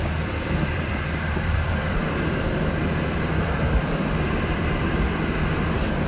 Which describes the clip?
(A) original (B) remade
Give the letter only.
B